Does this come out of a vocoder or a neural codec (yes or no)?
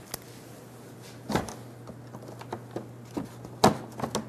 no